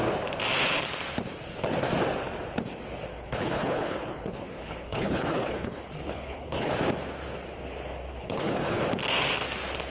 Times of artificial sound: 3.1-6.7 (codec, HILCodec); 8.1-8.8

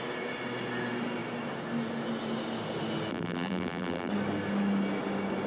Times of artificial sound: 3.1-4.1 (vocoder, BigVGAN v2)

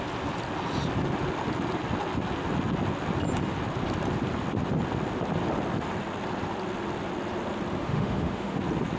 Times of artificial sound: 7.8-8.6 (autoencoder, DAC-VAE)

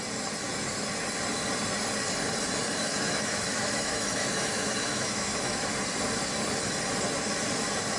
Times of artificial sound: 2.7-5.7 (autoencoder, DAC-VAE)

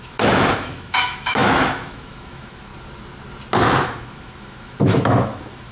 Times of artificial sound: 0.0-2.7 (autoencoder, DAC-VAE); 3.6-5.7

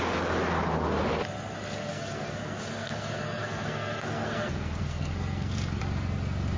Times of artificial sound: 1.8-5.8 (codec, SNAC)